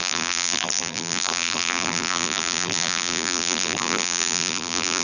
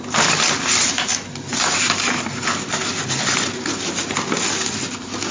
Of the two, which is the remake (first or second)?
first